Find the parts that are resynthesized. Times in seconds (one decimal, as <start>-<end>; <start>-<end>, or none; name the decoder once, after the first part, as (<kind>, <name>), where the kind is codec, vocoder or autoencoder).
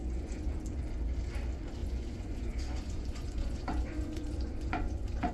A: 0.0-0.5 (vocoder, Vocos); 1.8-5.3